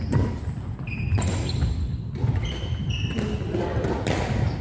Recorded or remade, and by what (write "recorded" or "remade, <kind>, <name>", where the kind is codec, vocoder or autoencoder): recorded